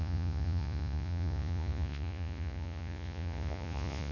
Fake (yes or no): yes